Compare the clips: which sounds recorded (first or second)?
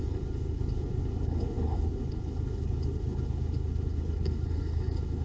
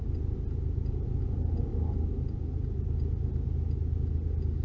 second